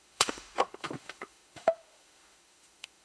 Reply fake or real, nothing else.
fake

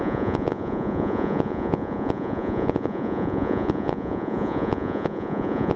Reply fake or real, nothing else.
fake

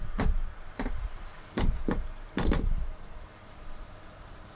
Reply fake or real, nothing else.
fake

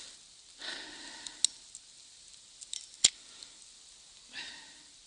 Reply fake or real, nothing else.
real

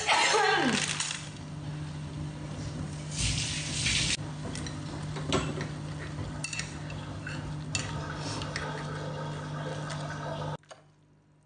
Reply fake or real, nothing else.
real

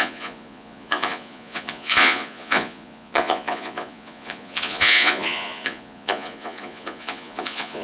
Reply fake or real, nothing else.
fake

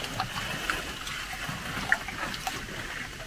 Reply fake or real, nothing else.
real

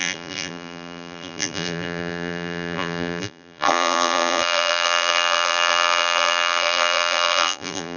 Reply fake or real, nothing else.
fake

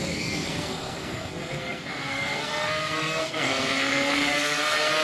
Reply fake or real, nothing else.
fake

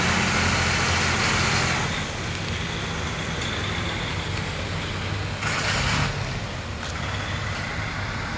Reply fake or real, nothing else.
real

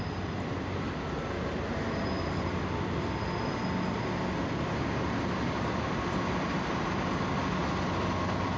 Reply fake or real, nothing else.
real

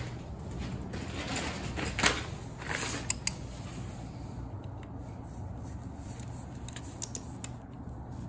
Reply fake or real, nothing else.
real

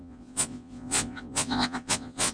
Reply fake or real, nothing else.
fake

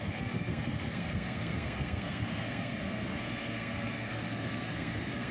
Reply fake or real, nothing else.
fake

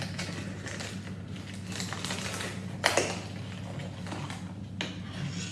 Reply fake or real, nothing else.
real